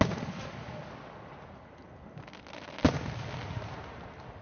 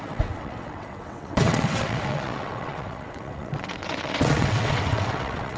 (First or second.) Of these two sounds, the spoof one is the second